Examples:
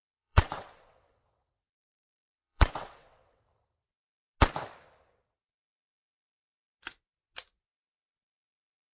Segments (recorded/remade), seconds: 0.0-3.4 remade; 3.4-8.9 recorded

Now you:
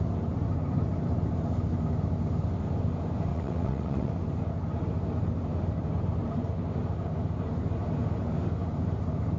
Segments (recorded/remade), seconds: 0.0-3.3 recorded; 3.3-4.1 remade; 4.1-9.4 recorded

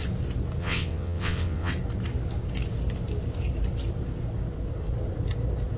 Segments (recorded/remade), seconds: 0.0-0.6 recorded; 0.6-1.7 remade; 1.7-5.8 recorded

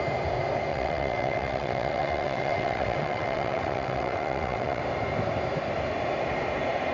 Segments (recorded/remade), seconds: 0.0-0.7 recorded; 0.7-4.8 remade; 4.8-6.9 recorded

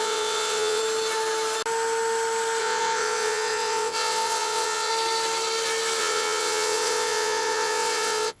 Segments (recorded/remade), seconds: 0.0-0.8 remade; 0.8-2.6 recorded; 2.6-4.9 remade; 4.9-6.0 recorded; 6.0-8.4 remade

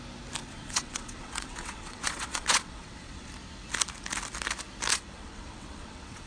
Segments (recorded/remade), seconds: 0.0-0.4 recorded; 0.4-3.3 remade; 3.3-4.9 recorded; 4.9-6.3 remade